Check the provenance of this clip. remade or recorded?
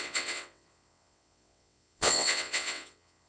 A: remade